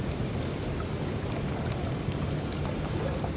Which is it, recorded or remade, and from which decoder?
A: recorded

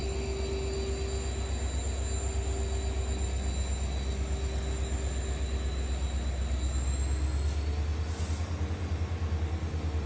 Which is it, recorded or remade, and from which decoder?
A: recorded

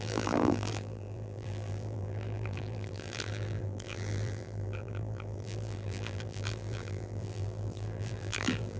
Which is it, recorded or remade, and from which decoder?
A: remade, vocoder, BigVGAN v2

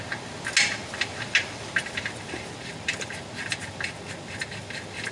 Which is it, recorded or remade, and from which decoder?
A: recorded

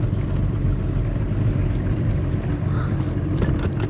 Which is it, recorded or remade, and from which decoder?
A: recorded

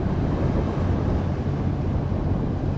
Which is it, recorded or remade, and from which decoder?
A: recorded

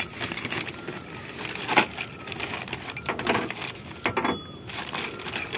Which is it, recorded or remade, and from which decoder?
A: recorded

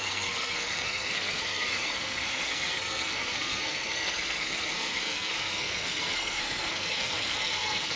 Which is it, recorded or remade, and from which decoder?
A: remade, codec, SNAC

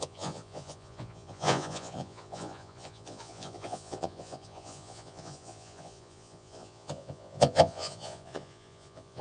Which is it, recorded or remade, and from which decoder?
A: remade, vocoder, Vocos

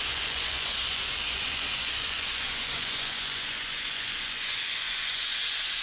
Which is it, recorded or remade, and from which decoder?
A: remade, vocoder, Vocos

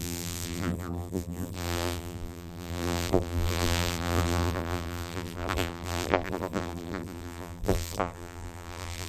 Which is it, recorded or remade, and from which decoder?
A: remade, vocoder, BigVGAN v2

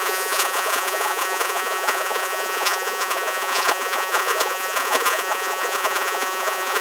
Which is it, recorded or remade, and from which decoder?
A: remade, vocoder, Vocos